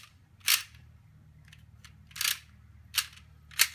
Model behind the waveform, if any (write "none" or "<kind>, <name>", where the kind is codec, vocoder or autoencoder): none